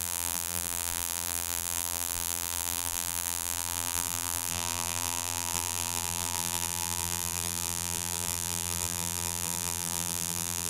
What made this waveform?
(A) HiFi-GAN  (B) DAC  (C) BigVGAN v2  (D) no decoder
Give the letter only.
C